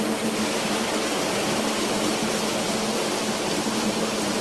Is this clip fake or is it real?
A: real